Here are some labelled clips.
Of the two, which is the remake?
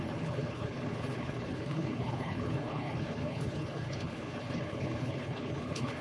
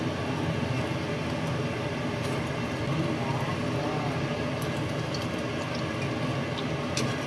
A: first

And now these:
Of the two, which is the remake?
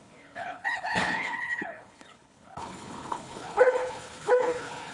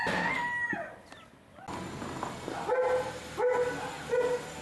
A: first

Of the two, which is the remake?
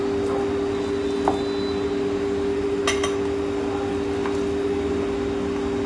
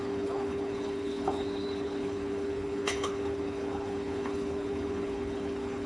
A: second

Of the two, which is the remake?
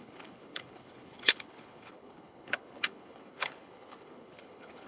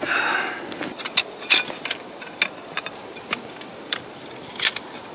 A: first